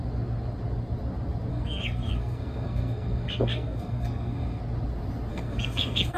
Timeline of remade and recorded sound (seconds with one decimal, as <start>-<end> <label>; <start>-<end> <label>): 0.0-1.5 recorded; 1.5-4.6 remade; 4.6-5.3 recorded; 5.3-6.2 remade

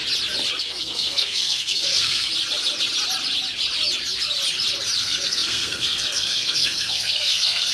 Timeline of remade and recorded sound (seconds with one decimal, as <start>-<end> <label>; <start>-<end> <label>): 0.0-0.6 recorded; 0.6-2.3 remade; 2.3-5.0 recorded; 5.0-7.7 remade

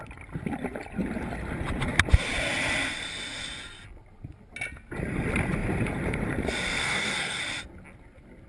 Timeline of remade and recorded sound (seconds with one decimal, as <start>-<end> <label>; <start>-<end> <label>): 0.0-6.8 recorded; 6.8-7.4 remade; 7.4-8.5 recorded

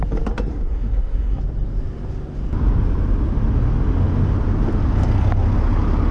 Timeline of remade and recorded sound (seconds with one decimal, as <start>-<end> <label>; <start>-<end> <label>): 0.0-0.5 recorded; 0.5-1.4 remade; 1.4-6.1 recorded